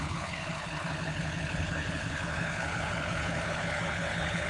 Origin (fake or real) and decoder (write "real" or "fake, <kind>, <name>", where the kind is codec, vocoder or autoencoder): fake, codec, HILCodec